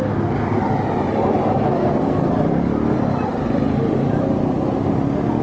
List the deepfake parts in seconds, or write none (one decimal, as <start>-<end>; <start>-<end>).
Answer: 1.8-2.3